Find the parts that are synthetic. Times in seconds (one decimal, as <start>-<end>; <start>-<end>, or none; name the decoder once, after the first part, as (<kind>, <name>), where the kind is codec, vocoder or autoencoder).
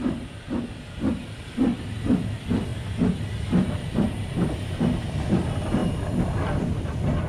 0.0-2.7 (vocoder, BigVGAN v2); 4.7-5.8; 6.3-7.3